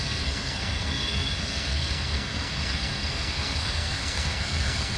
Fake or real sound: fake